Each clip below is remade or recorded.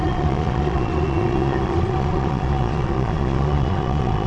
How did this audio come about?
remade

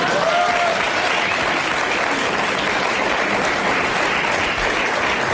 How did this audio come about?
recorded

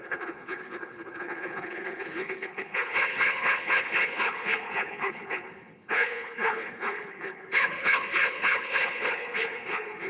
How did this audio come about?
remade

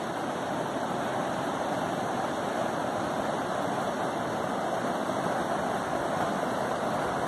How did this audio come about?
recorded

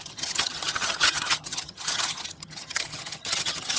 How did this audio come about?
remade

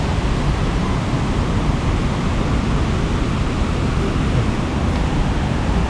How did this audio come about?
recorded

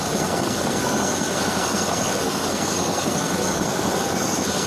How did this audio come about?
remade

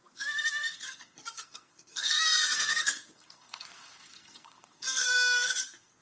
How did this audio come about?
remade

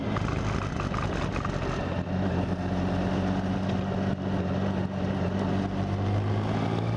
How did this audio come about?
recorded